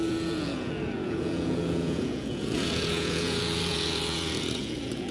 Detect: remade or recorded remade